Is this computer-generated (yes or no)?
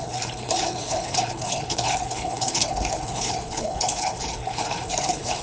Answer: yes